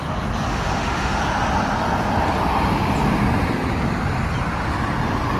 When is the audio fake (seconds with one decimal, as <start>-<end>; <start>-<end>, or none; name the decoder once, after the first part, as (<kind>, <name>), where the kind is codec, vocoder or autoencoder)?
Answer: 0.5-1.2 (autoencoder, DAC-VAE)